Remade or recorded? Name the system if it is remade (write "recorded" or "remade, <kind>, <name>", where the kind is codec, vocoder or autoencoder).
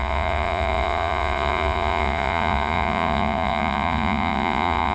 remade, vocoder, Vocos